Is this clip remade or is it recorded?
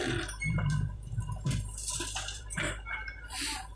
remade